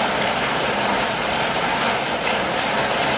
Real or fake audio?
real